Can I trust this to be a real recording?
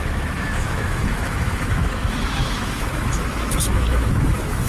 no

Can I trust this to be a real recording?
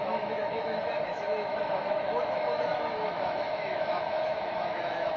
no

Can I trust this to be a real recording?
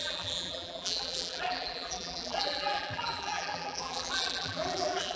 no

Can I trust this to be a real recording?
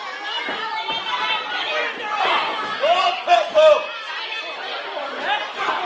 yes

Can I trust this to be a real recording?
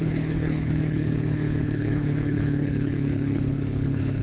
no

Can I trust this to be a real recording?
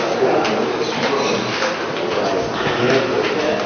yes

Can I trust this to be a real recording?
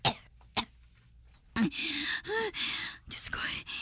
yes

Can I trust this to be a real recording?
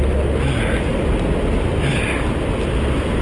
yes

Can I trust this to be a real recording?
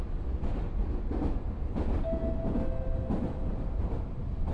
yes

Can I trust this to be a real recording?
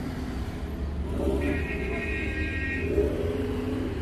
yes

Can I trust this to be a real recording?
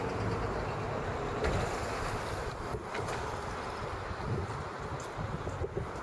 yes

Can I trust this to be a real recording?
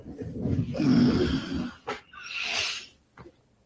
yes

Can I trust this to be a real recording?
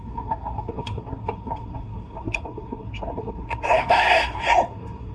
no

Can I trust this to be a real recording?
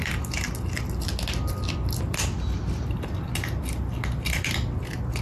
yes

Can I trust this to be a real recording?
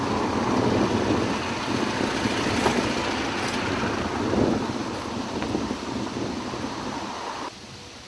yes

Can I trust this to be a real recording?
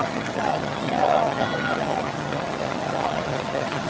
no